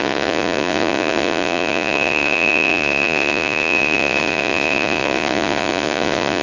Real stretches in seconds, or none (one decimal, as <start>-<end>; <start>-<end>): none